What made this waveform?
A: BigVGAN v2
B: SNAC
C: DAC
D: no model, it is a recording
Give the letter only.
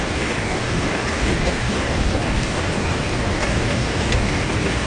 C